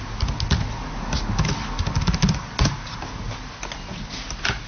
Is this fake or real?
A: real